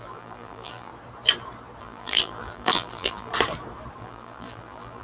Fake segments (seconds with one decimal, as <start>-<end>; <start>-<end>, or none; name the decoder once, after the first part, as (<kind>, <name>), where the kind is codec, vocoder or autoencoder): 0.0-0.9 (vocoder, BigVGAN v2); 1.8-3.3; 4.0-5.0